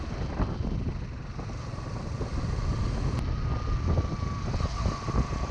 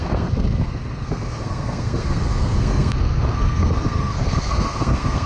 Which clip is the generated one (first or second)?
second